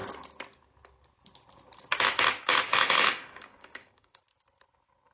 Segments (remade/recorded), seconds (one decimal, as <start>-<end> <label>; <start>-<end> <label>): 0.0-2.5 recorded; 2.5-4.2 remade; 4.2-5.1 recorded